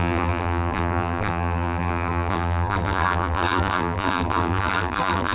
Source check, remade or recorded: remade